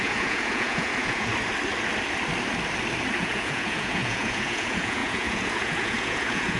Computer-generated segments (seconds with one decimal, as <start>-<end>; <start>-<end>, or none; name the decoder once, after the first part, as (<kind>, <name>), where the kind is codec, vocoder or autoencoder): 0.0-1.3 (vocoder, Vocos); 3.2-6.6